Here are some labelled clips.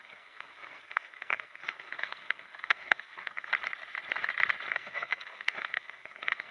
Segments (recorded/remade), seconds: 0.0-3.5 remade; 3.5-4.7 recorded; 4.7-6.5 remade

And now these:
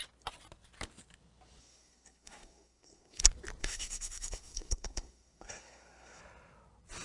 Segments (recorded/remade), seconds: 0.0-1.6 recorded; 1.6-3.2 remade; 3.2-3.6 recorded; 3.6-6.2 remade; 6.2-7.0 recorded